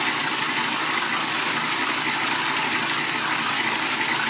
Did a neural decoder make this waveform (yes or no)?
no